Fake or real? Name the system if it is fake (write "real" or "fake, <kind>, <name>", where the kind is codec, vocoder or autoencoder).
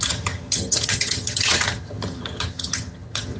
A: fake, vocoder, HiFi-GAN